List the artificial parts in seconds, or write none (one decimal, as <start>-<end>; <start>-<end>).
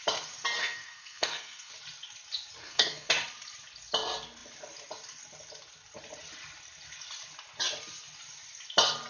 0.6-1.7; 2.6-3.1